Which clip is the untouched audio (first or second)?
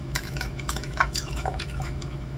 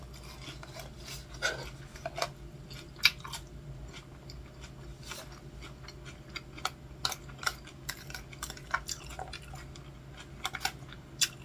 second